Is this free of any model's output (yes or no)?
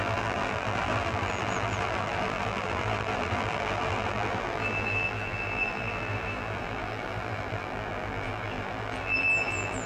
no